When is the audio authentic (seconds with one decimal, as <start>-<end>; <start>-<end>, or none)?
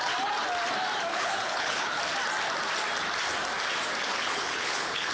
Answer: 0.0-1.1; 2.0-4.1